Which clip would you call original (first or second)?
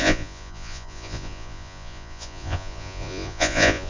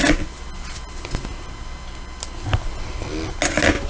second